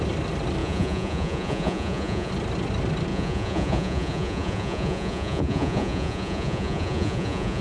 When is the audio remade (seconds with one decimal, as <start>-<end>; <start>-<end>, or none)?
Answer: 0.6-2.3; 3.1-7.6